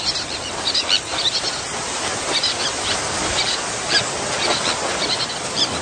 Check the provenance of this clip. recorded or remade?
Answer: recorded